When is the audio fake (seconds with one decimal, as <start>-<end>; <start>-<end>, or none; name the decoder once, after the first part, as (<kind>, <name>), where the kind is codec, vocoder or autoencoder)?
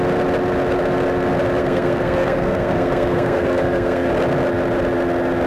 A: 1.6-4.1 (codec, SNAC)